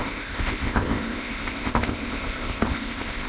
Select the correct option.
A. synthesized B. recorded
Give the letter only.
A